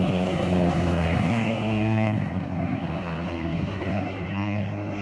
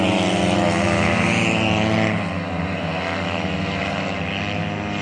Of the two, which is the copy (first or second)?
first